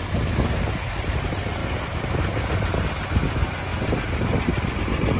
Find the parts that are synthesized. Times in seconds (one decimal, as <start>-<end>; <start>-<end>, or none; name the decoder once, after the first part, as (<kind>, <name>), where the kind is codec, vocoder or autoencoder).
none